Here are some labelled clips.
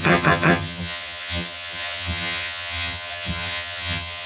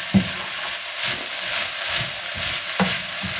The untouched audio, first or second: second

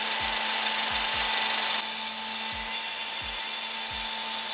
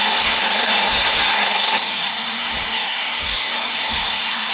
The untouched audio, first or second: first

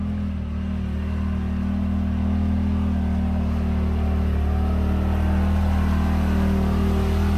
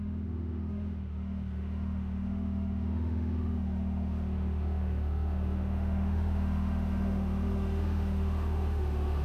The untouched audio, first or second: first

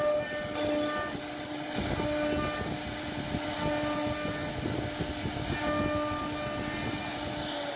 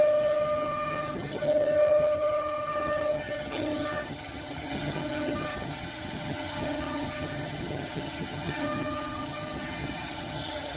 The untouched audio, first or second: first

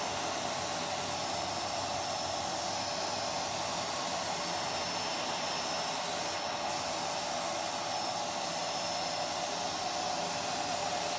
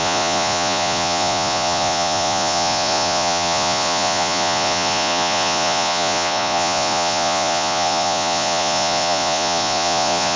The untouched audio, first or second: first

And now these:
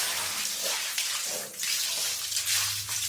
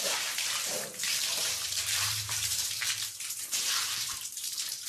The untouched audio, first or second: first